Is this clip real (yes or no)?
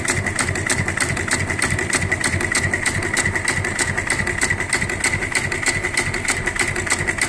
yes